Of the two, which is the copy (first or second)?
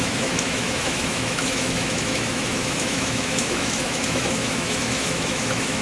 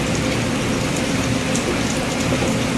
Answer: first